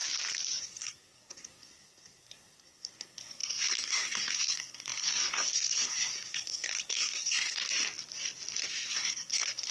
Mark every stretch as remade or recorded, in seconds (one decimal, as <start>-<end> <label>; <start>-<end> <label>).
0.0-0.6 recorded; 0.6-7.6 remade; 7.6-8.7 recorded; 8.7-9.7 remade